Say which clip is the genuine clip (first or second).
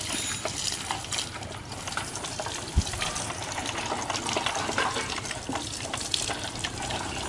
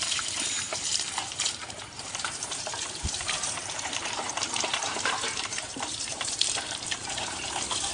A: first